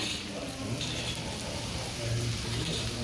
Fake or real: real